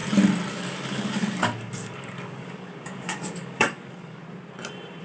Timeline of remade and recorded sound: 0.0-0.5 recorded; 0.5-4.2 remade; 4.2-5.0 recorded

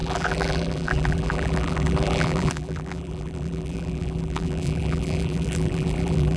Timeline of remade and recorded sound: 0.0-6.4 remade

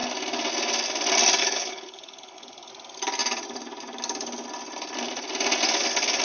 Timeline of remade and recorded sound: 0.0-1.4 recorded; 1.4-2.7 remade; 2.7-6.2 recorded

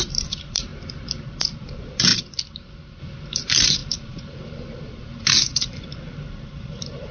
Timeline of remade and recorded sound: 0.0-0.7 remade; 0.7-1.6 recorded; 1.6-2.1 remade; 2.1-3.0 recorded; 3.0-7.1 remade

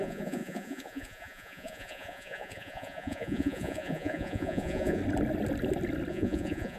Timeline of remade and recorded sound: 0.0-5.0 remade; 5.0-6.1 recorded; 6.1-6.8 remade